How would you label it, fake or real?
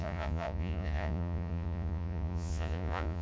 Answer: fake